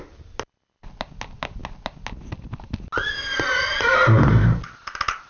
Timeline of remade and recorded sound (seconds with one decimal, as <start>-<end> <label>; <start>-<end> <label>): 0.0-5.3 recorded

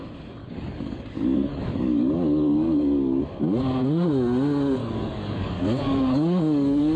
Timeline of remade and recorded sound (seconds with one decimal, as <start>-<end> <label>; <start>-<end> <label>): 0.0-0.4 recorded; 0.4-3.2 remade; 3.2-4.8 recorded; 4.8-7.0 remade

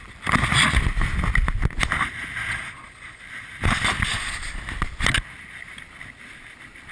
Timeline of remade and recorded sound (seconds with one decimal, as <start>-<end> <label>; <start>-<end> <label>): 0.0-2.5 recorded; 2.5-3.2 remade; 3.2-4.1 recorded; 4.1-4.6 remade; 4.6-6.9 recorded

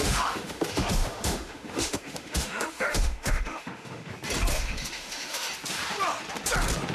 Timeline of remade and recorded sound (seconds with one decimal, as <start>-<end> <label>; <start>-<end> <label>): 0.0-4.1 remade; 4.1-4.5 recorded; 4.5-5.5 remade; 5.5-6.9 recorded

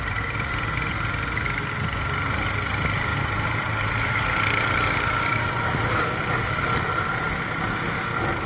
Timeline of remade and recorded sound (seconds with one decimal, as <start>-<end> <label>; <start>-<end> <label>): 0.0-3.1 recorded; 3.1-7.3 remade; 7.3-8.5 recorded

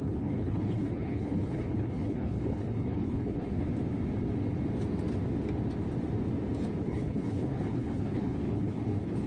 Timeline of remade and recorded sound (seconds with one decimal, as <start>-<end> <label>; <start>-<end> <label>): 0.0-3.7 remade; 3.7-6.8 recorded; 6.8-9.3 remade

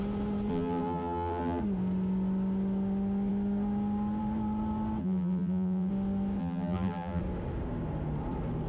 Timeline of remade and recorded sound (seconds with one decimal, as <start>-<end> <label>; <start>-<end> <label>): 0.0-0.5 recorded; 0.5-1.6 remade; 1.6-5.0 recorded; 5.0-5.9 remade; 5.9-6.4 recorded; 6.4-7.2 remade; 7.2-8.7 recorded

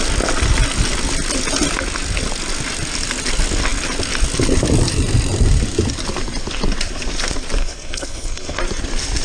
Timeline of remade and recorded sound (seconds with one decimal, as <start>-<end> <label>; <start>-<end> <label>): 0.0-7.6 recorded; 7.6-8.6 remade; 8.6-9.2 recorded